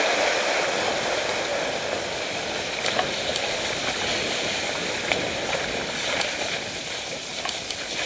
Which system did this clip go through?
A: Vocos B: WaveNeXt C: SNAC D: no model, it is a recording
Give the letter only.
D